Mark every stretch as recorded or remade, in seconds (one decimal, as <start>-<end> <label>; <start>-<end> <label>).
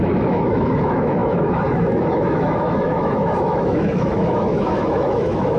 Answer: 0.0-5.6 remade